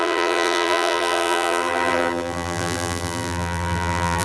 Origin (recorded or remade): remade